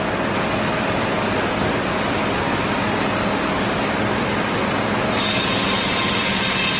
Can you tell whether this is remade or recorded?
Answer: recorded